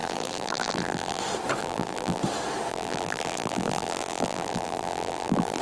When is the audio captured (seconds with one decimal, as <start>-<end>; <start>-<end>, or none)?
1.2-1.6; 2.2-2.7